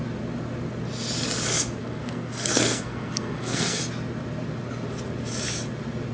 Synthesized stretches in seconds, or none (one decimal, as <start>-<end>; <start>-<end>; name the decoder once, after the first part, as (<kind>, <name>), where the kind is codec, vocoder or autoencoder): 1.8-3.8 (codec, SNAC)